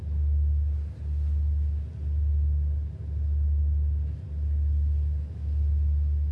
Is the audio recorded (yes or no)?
yes